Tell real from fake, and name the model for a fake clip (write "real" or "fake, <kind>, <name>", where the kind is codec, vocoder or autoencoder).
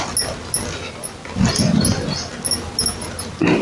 real